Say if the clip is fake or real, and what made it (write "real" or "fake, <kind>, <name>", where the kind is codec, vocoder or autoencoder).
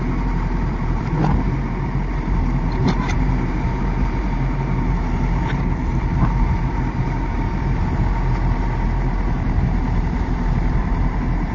fake, vocoder, BigVGAN v2